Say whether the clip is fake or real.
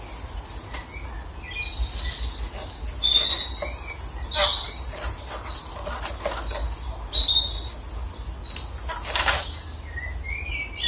real